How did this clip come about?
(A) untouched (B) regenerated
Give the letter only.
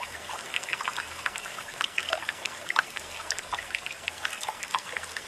B